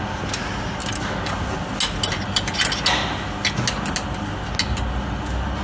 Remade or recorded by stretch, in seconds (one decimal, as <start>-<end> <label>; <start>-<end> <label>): 0.0-5.6 recorded